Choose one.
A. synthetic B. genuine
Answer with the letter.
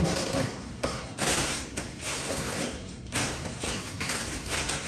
A